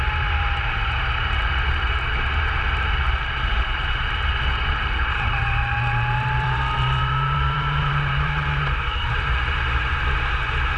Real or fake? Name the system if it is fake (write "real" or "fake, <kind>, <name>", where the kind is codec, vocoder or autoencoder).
fake, vocoder, BigVGAN v2